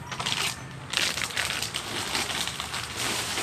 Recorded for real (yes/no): yes